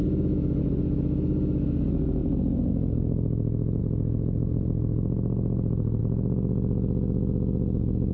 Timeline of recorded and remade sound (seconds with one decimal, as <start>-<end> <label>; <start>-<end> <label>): 0.0-2.2 recorded; 2.2-2.7 remade; 2.7-8.1 recorded

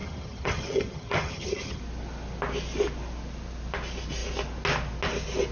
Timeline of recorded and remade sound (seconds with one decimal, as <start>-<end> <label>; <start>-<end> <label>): 0.0-1.8 remade; 1.8-5.5 recorded

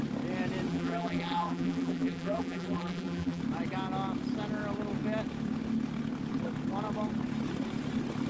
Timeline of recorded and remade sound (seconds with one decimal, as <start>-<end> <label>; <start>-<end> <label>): 0.0-0.7 recorded; 0.7-3.4 remade; 3.4-8.3 recorded

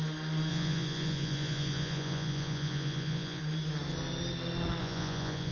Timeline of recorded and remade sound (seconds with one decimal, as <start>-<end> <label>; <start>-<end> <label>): 0.0-0.5 recorded; 0.5-3.4 remade; 3.4-4.8 recorded; 4.8-5.5 remade

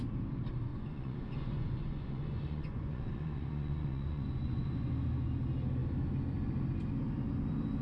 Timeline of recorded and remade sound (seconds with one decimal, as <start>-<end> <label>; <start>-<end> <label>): 0.0-0.7 recorded; 0.7-4.6 remade; 4.6-7.8 recorded